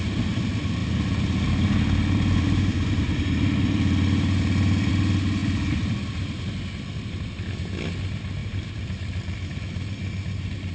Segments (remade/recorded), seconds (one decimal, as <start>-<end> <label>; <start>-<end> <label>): 0.0-0.8 recorded; 0.8-4.9 remade; 4.9-5.4 recorded; 5.4-6.2 remade; 6.2-8.4 recorded; 8.4-9.4 remade; 9.4-10.7 recorded